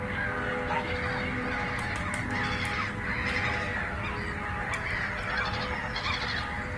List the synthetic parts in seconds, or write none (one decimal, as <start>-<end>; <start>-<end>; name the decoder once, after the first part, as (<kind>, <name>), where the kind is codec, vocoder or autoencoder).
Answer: none